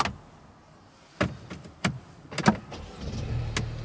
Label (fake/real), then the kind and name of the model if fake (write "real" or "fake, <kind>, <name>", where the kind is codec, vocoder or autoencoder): real